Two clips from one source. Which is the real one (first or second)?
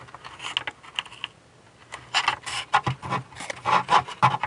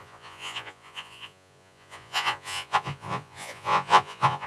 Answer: first